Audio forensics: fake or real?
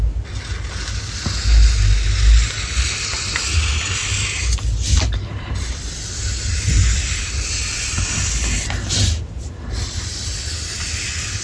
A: real